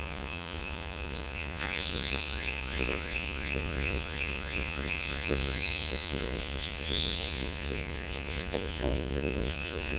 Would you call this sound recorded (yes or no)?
no